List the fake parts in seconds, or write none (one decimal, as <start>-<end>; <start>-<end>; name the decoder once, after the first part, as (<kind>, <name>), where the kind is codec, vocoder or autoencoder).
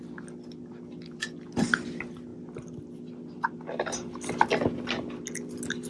none